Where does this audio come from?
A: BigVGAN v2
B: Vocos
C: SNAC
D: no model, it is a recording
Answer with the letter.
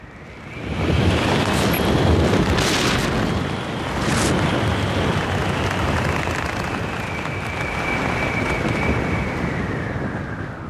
D